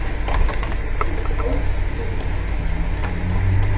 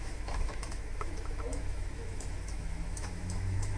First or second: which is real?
first